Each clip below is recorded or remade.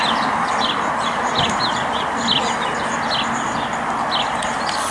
recorded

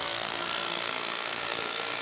remade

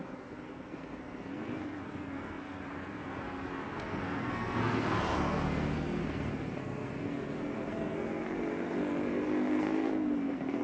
remade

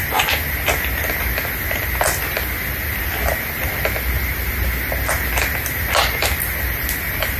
recorded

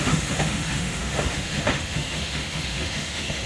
remade